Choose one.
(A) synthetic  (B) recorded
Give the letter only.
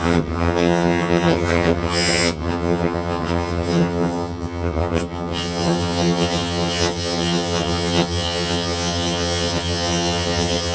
A